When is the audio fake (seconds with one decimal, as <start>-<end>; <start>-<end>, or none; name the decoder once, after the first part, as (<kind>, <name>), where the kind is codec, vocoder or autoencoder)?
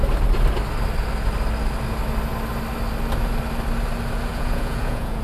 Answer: 4.3-5.2 (vocoder, Vocos)